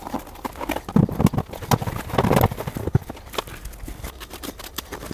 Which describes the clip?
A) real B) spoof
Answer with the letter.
A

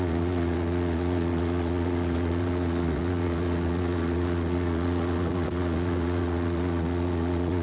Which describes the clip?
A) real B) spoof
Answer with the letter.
B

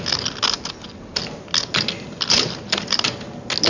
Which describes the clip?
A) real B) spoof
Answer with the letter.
A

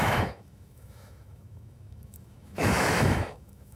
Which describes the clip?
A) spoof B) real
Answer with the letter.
A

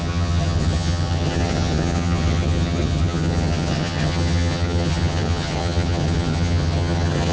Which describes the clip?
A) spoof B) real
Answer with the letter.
A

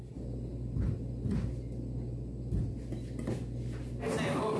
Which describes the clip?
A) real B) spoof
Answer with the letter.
A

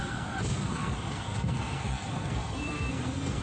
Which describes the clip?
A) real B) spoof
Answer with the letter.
B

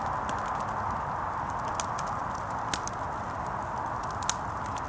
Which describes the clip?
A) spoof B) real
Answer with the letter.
B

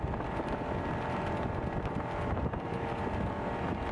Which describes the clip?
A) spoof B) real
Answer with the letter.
B